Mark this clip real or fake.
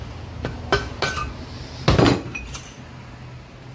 real